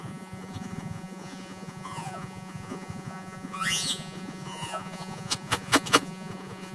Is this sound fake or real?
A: fake